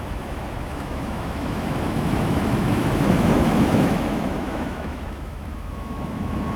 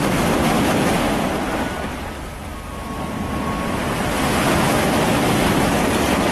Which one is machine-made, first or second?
first